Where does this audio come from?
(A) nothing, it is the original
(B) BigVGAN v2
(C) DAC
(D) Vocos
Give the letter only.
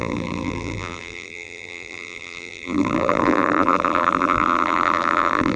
B